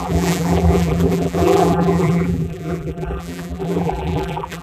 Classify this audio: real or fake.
fake